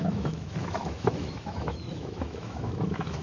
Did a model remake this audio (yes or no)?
yes